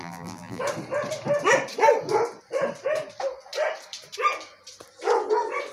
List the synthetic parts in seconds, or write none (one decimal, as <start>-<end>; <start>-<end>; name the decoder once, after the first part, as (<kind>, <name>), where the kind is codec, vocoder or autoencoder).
0.0-0.6 (vocoder, BigVGAN v2)

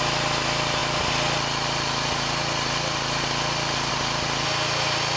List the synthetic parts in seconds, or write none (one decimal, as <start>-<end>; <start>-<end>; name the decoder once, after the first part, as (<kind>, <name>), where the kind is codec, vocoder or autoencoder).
none

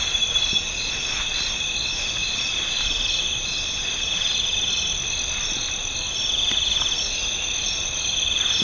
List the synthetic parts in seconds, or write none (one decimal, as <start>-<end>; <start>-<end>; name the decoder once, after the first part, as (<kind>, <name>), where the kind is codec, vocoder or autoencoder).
2.2-3.6 (vocoder, BigVGAN v2)

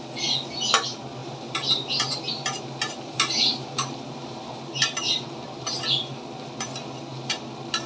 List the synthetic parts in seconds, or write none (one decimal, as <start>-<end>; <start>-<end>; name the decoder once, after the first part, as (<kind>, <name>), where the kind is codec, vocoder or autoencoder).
1.2-5.8 (vocoder, BigVGAN v2); 7.1-7.9